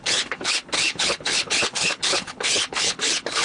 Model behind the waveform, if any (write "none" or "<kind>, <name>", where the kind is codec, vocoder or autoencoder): codec, HILCodec